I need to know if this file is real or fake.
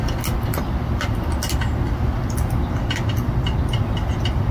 real